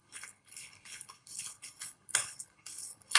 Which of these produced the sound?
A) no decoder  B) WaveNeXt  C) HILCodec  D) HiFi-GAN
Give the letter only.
C